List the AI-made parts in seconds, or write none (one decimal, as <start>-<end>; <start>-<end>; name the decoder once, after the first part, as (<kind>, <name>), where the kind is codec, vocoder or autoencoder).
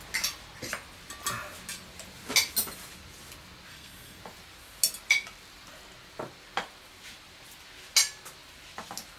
3.7-4.2 (codec, SNAC)